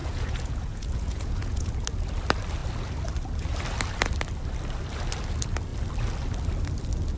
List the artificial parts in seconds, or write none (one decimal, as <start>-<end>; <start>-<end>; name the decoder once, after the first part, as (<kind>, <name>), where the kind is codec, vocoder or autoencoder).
0.0-1.7 (vocoder, Vocos)

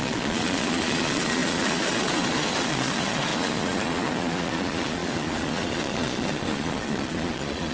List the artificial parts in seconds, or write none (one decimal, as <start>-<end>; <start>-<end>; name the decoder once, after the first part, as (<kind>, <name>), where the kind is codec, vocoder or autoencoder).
0.0-7.7 (vocoder, Vocos)

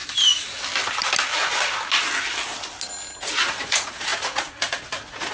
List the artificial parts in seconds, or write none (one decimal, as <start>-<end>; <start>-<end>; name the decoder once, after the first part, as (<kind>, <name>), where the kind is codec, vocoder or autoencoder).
3.2-5.3 (vocoder, Vocos)

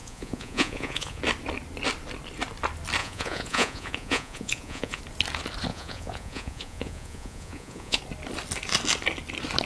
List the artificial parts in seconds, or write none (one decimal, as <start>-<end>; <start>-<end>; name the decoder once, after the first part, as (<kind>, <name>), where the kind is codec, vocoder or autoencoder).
0.0-1.2 (vocoder, Vocos); 3.0-5.0; 5.7-8.0

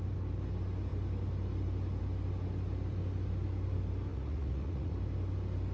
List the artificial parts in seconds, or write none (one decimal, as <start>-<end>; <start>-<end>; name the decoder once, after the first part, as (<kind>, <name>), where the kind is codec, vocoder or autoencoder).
4.1-4.9 (vocoder, Vocos)